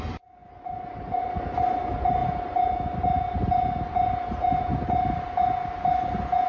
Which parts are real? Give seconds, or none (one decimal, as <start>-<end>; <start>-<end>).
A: 0.0-6.5